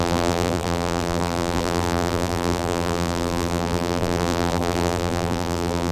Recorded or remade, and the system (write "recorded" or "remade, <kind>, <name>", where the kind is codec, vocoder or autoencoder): remade, vocoder, BigVGAN v2